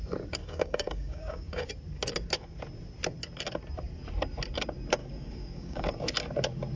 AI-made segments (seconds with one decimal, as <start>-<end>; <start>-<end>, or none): 0.4-1.7; 5.0-6.1